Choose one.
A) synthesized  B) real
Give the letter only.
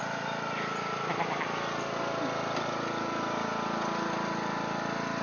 B